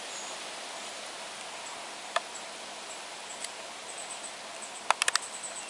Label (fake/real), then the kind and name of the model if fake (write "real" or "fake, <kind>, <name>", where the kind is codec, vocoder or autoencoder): real